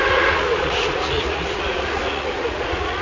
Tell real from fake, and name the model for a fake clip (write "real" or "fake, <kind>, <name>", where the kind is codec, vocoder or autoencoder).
fake, vocoder, Vocos